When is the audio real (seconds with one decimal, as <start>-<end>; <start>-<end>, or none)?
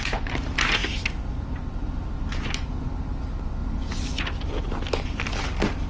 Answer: 0.0-5.9